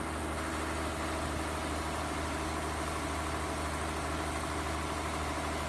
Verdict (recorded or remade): recorded